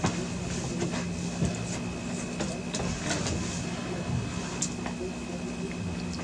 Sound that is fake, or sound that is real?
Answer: real